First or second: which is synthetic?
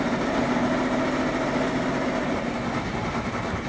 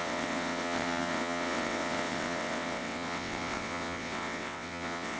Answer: second